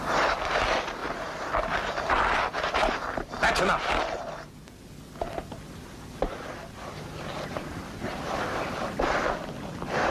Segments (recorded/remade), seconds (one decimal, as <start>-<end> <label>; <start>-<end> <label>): 0.0-1.0 recorded; 1.0-1.5 remade; 1.5-6.5 recorded; 6.5-9.7 remade; 9.7-10.1 recorded